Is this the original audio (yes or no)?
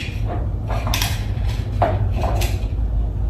yes